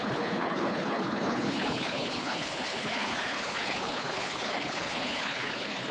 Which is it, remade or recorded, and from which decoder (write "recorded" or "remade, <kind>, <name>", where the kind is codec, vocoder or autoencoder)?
remade, codec, HILCodec